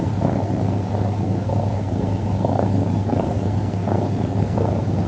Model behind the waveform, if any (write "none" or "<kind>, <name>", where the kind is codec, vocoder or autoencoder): codec, SNAC